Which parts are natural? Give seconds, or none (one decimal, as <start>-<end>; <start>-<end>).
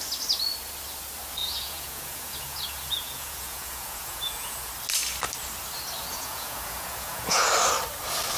0.0-1.4; 4.7-6.1; 7.5-8.4